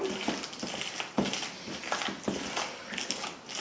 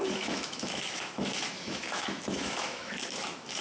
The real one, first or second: first